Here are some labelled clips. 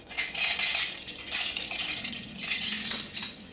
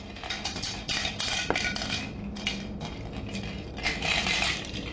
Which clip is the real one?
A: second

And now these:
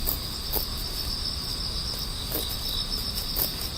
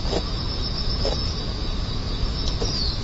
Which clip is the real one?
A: first